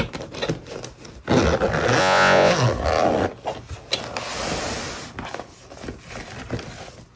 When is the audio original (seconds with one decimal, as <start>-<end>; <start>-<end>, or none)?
0.0-2.0; 2.5-7.2